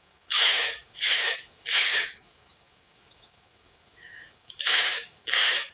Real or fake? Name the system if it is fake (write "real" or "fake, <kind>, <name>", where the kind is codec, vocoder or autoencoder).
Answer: fake, autoencoder, DAC-VAE